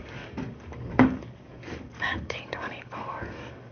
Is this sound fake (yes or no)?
yes